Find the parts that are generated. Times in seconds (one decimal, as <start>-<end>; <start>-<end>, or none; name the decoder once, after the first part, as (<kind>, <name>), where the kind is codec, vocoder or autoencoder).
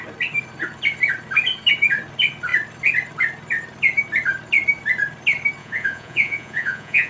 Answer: 5.6-7.1 (vocoder, Vocos)